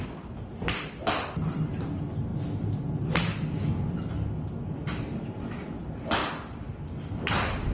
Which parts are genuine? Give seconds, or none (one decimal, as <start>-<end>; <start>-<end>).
0.0-7.7